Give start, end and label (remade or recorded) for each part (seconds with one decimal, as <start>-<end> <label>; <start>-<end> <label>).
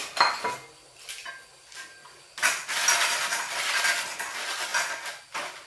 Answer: 0.0-5.7 recorded